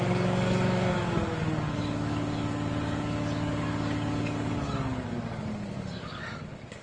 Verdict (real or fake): fake